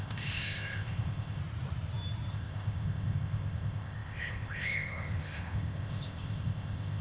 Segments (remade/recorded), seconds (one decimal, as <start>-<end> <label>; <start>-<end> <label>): 0.0-1.4 remade; 1.4-2.3 recorded; 2.3-7.0 remade